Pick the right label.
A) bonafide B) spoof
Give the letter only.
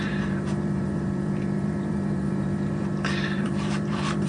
B